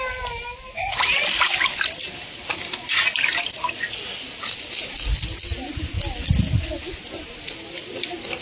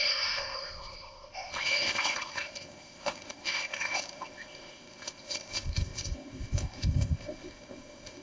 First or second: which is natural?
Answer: first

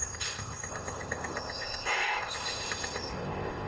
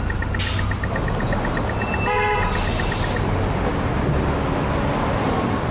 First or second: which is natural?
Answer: second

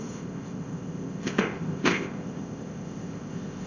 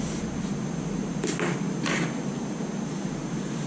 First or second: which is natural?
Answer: second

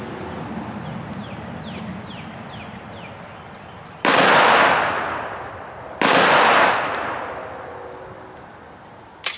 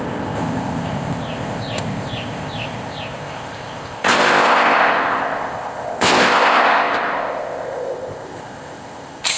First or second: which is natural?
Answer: first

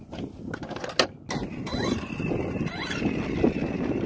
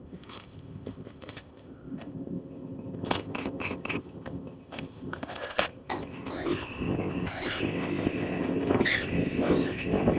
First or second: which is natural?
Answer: first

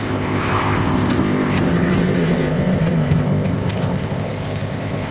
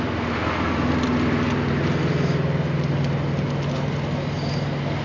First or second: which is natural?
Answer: second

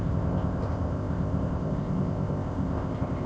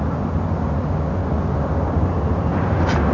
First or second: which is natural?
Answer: second